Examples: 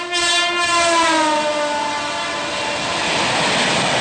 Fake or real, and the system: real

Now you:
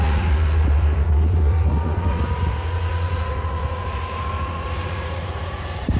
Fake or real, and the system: fake, vocoder, Vocos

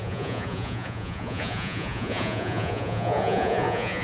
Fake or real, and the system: fake, vocoder, Vocos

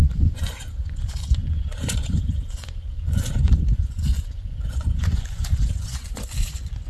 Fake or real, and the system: fake, vocoder, Vocos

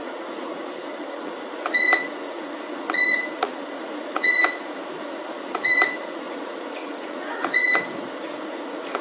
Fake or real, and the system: fake, vocoder, Vocos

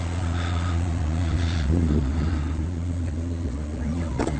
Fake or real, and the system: fake, vocoder, Vocos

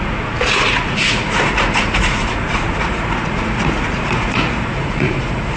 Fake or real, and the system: fake, vocoder, Vocos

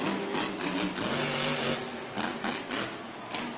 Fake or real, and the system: real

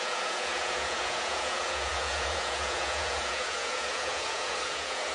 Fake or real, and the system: fake, vocoder, Vocos